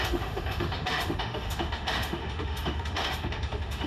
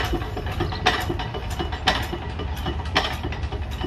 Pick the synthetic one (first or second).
first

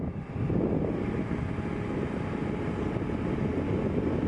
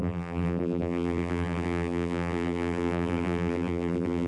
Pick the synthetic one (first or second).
second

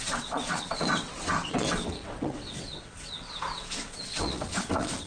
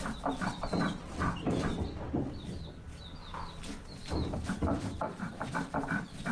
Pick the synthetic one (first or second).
first